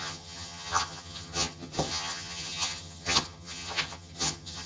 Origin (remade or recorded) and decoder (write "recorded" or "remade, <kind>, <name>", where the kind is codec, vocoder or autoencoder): remade, vocoder, HiFi-GAN